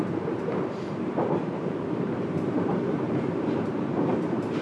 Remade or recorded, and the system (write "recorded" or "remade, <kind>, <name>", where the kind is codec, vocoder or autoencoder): remade, vocoder, BigVGAN v2